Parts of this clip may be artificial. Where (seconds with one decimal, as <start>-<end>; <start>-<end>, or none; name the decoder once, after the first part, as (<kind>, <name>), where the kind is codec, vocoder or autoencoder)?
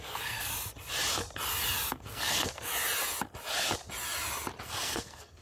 0.0-0.5 (codec, SNAC); 1.9-2.7; 4.6-5.4